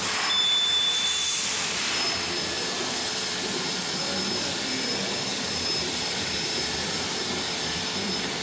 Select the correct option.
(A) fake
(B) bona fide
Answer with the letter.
A